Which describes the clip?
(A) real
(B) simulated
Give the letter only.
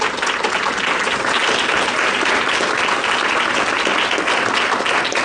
A